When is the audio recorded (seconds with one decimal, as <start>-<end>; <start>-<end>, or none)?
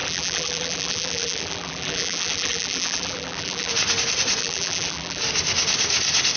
3.7-4.4; 5.2-6.4